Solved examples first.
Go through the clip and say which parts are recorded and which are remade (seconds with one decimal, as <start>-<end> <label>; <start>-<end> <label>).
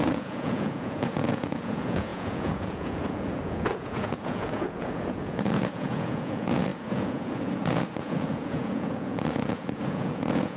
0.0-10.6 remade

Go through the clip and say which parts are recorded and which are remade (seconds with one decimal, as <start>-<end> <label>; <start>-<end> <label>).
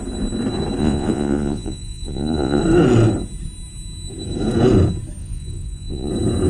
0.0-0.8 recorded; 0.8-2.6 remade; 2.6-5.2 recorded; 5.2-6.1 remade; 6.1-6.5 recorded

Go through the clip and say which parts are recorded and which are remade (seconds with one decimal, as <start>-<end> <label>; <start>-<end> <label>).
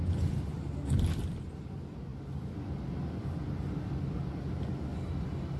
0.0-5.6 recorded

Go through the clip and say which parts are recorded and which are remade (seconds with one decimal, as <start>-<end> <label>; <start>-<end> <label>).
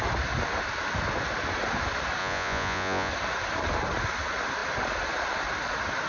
0.0-2.2 recorded; 2.2-3.1 remade; 3.1-6.1 recorded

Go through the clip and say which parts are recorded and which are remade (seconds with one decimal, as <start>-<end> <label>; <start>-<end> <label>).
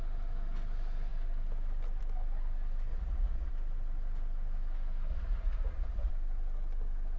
0.0-2.9 recorded; 2.9-3.5 remade; 3.5-5.1 recorded; 5.1-6.1 remade; 6.1-7.2 recorded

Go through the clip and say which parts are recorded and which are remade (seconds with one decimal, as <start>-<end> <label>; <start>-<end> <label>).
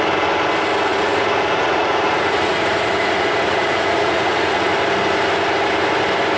0.0-0.9 recorded; 0.9-4.7 remade; 4.7-6.4 recorded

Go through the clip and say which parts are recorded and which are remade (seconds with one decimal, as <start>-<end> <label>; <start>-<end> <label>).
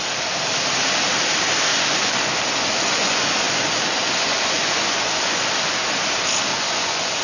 0.0-1.7 recorded; 1.7-5.5 remade; 5.5-6.5 recorded; 6.5-7.2 remade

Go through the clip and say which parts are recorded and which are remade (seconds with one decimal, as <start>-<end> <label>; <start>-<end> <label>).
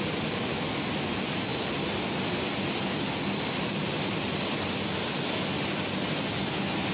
0.0-6.9 recorded